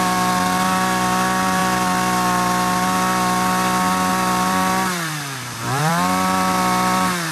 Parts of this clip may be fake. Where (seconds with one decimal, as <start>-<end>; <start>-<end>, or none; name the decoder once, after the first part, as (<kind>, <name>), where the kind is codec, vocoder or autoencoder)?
0.0-7.3 (vocoder, BigVGAN v2)